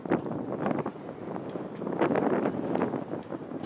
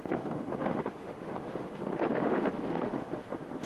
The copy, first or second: second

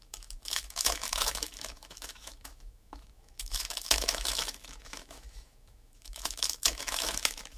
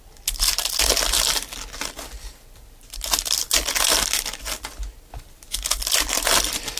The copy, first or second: first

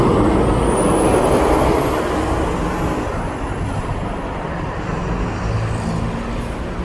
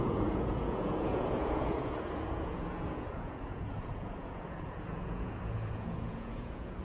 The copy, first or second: second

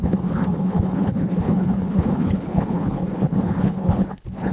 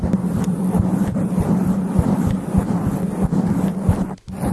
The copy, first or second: first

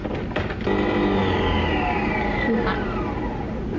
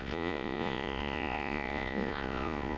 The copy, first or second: second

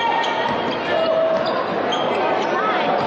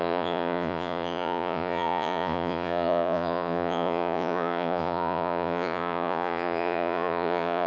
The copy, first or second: second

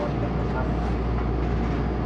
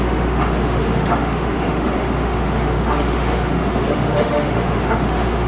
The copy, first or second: second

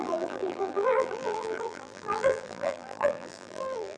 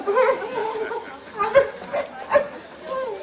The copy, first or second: first